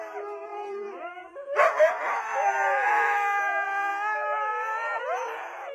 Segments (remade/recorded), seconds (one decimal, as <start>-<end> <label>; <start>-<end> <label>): 0.0-0.5 recorded; 0.5-3.9 remade; 3.9-5.7 recorded